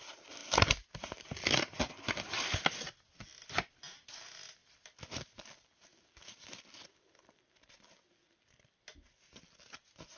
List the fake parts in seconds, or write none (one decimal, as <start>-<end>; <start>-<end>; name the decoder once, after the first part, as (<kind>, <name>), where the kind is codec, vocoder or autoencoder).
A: none